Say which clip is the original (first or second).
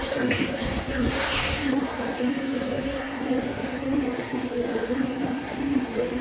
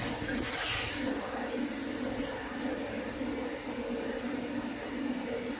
second